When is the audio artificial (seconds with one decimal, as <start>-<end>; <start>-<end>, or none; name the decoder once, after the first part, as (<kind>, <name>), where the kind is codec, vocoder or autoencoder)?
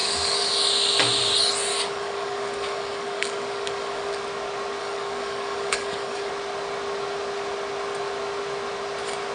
0.0-0.5 (codec, DAC); 1.7-4.1; 4.8-6.3